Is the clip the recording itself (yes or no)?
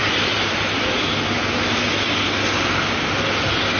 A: yes